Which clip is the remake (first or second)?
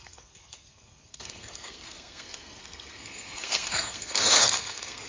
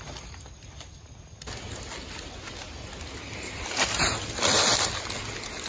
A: first